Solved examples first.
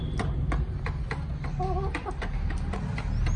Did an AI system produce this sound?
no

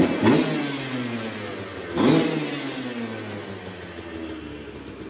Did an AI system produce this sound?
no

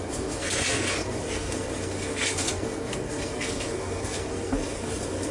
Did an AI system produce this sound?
yes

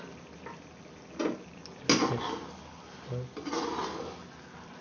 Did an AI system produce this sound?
no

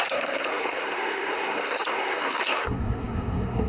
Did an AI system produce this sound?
yes